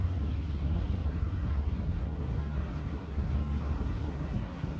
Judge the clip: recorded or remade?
remade